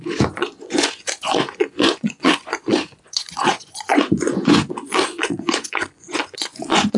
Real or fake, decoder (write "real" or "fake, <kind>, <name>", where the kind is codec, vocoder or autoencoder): fake, vocoder, Vocos